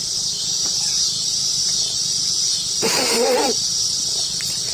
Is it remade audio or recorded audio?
remade